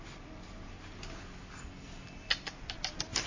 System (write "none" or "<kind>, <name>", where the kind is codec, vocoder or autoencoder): none